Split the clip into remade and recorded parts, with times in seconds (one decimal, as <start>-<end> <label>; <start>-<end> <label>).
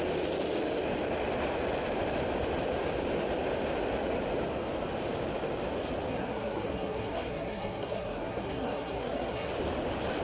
0.0-6.1 recorded; 6.1-9.5 remade; 9.5-10.2 recorded